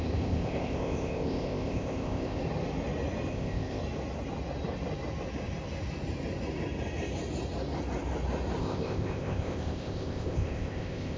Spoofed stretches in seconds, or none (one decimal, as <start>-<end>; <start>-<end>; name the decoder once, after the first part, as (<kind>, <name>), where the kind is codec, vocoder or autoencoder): 0.0-2.4 (codec, ZipCodec); 3.3-3.8; 8.6-11.2